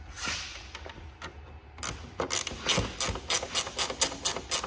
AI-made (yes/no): no